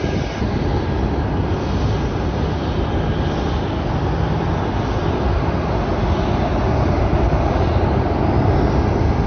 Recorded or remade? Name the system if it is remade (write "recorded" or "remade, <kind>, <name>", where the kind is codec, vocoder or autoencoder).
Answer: recorded